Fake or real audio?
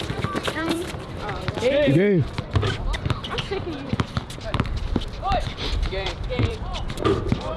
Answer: fake